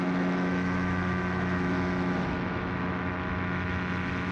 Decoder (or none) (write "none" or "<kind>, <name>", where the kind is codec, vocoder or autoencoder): autoencoder, DAC-VAE